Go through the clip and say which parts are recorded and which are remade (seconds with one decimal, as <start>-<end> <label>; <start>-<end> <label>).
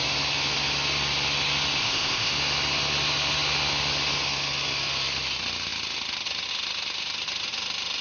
0.0-1.8 recorded; 1.8-2.3 remade; 2.3-8.0 recorded